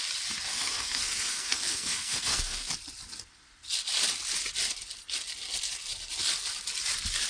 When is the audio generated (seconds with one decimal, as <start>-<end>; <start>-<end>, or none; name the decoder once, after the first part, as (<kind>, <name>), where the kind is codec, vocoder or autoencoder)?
0.5-2.7 (codec, SNAC)